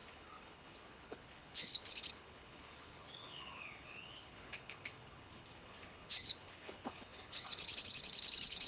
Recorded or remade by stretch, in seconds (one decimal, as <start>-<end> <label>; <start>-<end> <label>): 0.0-8.7 remade

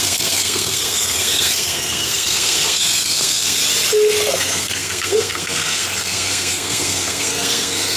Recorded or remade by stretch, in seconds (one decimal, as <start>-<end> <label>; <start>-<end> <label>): 0.0-3.6 remade; 3.6-4.3 recorded; 4.3-8.0 remade

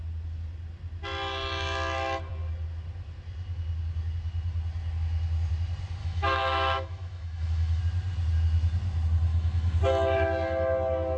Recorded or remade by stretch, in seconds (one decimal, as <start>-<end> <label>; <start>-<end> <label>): 0.0-6.0 recorded; 6.0-7.8 remade; 7.8-9.3 recorded; 9.3-9.8 remade; 9.8-11.2 recorded

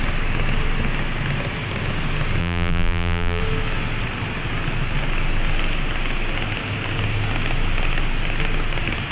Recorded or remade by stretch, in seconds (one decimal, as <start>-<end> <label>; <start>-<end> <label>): 0.0-2.4 recorded; 2.4-3.4 remade; 3.4-9.1 recorded

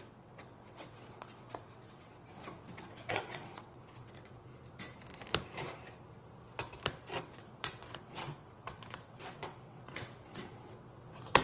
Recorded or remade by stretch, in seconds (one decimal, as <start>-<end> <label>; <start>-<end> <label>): 0.0-4.5 remade; 4.5-7.2 recorded; 7.2-11.4 remade

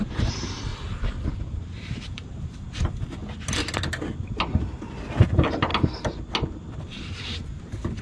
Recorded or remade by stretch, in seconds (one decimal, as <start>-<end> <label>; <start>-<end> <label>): 0.0-0.7 remade; 0.7-1.4 recorded; 1.4-3.2 remade; 3.2-4.7 recorded; 4.7-5.7 remade; 5.7-6.8 recorded; 6.8-8.0 remade

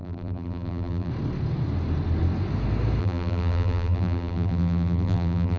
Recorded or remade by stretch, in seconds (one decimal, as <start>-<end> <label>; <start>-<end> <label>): 0.0-1.1 remade; 1.1-3.0 recorded; 3.0-5.6 remade

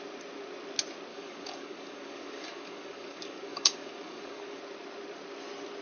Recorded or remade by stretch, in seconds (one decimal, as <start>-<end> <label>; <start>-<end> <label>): 0.0-1.1 recorded; 1.1-4.6 remade; 4.6-5.8 recorded